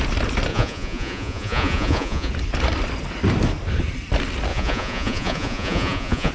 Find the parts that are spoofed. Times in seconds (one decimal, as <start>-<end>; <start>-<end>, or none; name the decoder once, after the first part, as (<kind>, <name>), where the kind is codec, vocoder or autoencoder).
0.5-2.3 (vocoder, Vocos); 4.5-6.3